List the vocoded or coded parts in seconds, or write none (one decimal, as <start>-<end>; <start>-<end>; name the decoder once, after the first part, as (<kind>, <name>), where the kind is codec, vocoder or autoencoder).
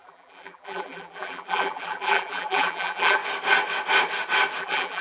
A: 0.0-3.2 (vocoder, BigVGAN v2); 4.6-5.0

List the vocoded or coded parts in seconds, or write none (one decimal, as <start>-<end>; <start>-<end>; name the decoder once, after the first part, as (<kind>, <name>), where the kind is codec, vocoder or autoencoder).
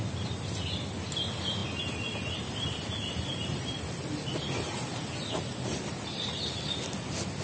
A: none